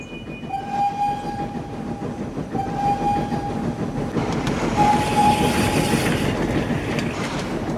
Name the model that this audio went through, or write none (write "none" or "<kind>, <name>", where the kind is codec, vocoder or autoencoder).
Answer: none